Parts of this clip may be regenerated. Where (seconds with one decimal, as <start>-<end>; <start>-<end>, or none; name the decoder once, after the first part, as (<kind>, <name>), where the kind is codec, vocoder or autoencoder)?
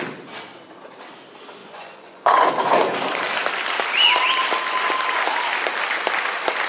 1.6-2.5 (vocoder, Vocos)